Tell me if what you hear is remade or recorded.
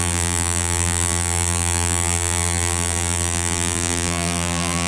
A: remade